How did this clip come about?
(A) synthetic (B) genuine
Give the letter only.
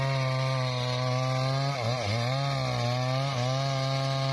B